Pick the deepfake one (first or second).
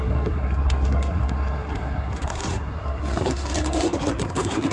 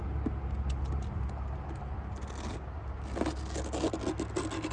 first